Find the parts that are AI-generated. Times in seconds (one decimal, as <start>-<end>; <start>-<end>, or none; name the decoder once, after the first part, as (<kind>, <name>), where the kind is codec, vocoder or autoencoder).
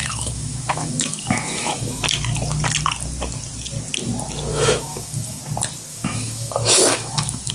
0.0-2.0 (autoencoder, DAC-VAE); 4.5-5.4; 5.9-7.5